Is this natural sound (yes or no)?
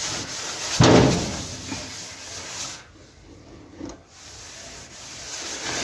yes